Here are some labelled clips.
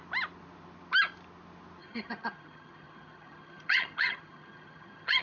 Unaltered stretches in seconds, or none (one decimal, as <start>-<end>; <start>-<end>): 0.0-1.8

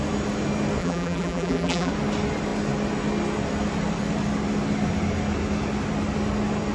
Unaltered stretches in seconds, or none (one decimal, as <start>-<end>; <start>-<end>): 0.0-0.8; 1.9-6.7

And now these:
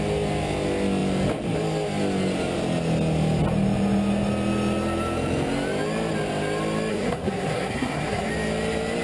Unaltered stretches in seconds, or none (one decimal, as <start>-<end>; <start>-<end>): 0.0-6.9; 8.3-9.0

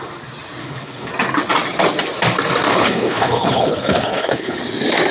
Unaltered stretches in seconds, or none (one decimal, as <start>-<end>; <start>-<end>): 0.0-0.6; 1.1-2.7; 4.6-5.1

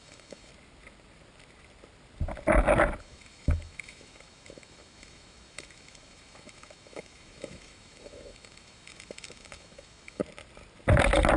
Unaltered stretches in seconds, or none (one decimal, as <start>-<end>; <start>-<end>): 0.5-3.0; 10.2-11.4

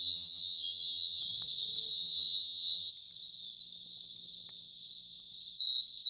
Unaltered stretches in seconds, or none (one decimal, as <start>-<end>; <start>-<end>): 1.2-1.9; 2.9-6.1

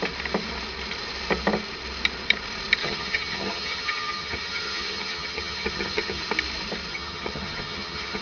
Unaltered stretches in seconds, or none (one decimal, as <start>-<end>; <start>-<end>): 0.0-2.8; 6.2-6.9